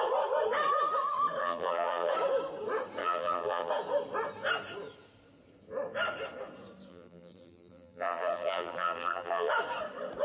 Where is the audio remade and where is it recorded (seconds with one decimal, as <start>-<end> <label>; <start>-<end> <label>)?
0.0-1.4 recorded; 1.4-2.1 remade; 2.1-3.0 recorded; 3.0-3.7 remade; 3.7-6.9 recorded; 6.9-9.5 remade; 9.5-10.2 recorded